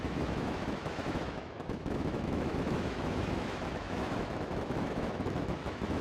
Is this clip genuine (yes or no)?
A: no